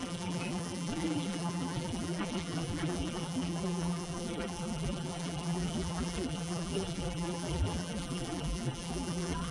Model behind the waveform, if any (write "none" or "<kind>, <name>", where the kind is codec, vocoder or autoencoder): vocoder, BigVGAN v2